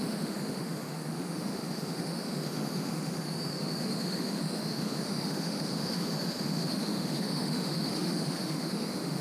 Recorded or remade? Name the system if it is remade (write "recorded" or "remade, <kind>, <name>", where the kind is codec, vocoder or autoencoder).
remade, autoencoder, DAC-VAE